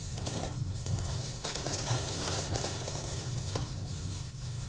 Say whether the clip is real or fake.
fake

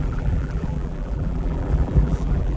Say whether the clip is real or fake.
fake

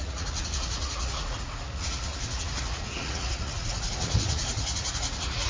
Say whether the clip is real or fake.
fake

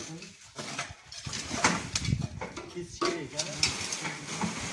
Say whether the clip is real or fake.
real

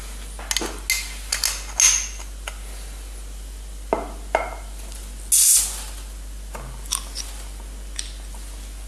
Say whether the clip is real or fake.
real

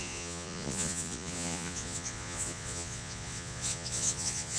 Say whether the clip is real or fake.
fake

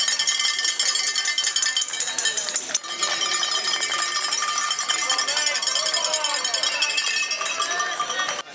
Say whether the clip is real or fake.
real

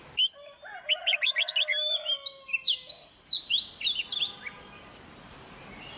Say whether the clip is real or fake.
real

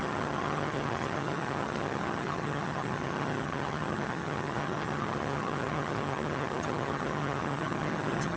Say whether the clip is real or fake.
fake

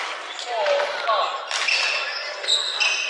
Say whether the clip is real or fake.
real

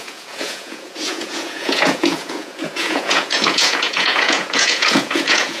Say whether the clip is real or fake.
fake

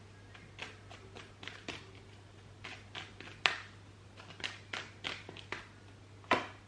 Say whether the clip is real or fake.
real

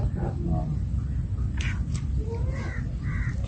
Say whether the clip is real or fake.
real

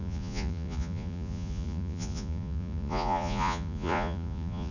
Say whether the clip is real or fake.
fake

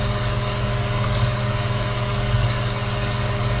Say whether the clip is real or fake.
fake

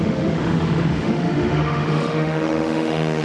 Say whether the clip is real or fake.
fake